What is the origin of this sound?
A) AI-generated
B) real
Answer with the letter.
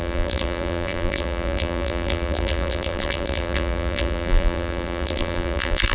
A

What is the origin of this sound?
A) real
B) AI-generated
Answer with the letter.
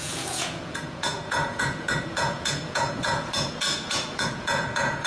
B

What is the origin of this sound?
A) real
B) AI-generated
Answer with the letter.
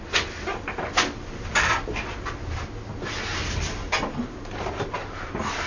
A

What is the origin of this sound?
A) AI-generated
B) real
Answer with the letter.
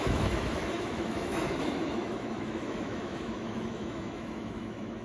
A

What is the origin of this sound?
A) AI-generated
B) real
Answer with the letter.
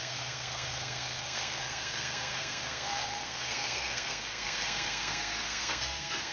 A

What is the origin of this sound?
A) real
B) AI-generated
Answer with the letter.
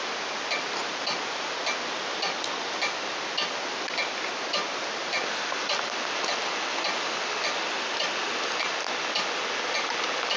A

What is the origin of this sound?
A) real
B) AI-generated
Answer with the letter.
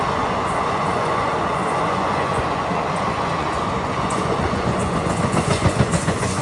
B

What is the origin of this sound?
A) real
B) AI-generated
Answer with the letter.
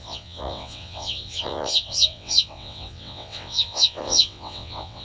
B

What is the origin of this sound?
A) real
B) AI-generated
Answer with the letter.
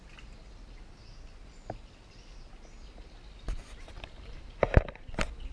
A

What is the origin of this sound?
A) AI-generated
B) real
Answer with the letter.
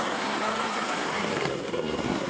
A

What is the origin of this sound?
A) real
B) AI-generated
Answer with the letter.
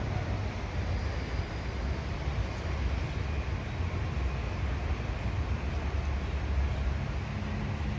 A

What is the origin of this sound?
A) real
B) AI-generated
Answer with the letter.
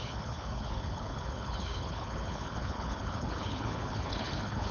B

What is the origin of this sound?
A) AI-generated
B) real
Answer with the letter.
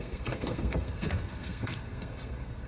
A